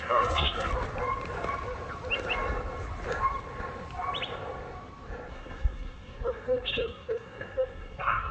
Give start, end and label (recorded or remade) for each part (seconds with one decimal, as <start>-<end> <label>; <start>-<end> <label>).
0.0-0.7 remade; 0.7-5.3 recorded; 5.3-8.3 remade